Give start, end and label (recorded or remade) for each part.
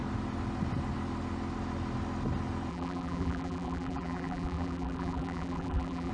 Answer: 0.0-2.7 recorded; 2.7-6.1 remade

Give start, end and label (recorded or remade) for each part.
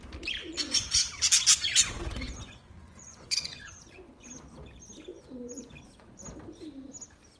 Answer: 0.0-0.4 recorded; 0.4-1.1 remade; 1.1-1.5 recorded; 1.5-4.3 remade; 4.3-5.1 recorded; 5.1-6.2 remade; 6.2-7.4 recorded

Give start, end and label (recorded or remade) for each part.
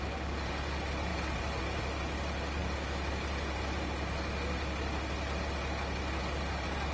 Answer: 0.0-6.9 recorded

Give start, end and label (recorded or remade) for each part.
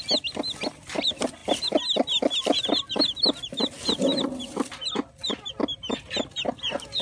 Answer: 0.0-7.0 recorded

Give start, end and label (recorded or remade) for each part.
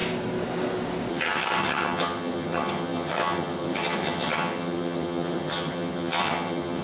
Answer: 0.0-1.1 recorded; 1.1-6.8 remade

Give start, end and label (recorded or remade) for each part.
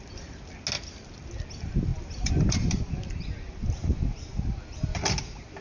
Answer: 0.0-5.6 recorded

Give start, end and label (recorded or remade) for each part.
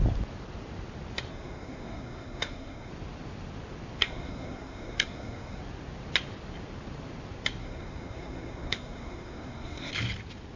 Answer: 0.0-1.3 recorded; 1.3-2.9 remade; 2.9-4.0 recorded; 4.0-5.6 remade; 5.6-7.6 recorded; 7.6-9.9 remade; 9.9-10.6 recorded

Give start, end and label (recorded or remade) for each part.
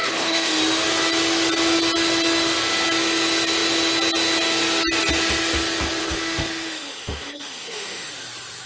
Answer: 0.0-0.6 remade; 0.6-6.0 recorded; 6.0-8.1 remade; 8.1-8.7 recorded